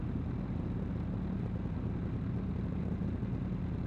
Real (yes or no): yes